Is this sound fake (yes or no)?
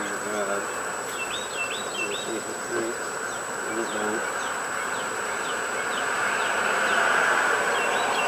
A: no